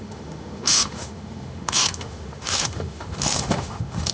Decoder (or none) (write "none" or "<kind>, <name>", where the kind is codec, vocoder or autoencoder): autoencoder, DAC-VAE